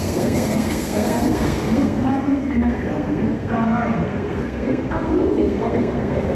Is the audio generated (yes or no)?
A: yes